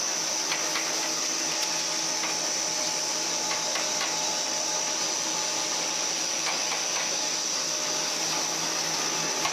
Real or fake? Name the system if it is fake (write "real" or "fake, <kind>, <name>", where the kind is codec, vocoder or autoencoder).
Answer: real